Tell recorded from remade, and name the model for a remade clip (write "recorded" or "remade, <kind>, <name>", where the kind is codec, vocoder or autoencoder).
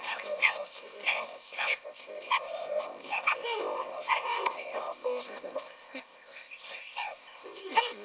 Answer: remade, codec, ZipCodec